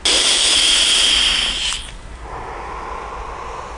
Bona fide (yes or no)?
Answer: yes